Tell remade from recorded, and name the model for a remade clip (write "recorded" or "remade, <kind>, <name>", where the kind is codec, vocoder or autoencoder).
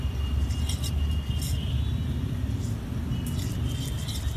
recorded